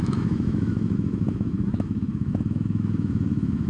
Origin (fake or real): fake